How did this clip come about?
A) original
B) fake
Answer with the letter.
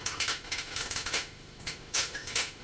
B